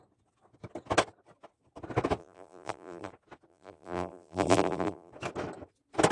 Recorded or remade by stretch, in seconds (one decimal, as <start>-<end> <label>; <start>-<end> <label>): 0.0-2.2 recorded; 2.2-3.1 remade; 3.1-3.5 recorded; 3.5-5.1 remade; 5.1-6.1 recorded